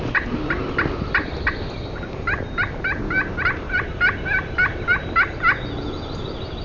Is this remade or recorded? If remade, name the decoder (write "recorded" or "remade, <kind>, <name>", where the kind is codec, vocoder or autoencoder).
recorded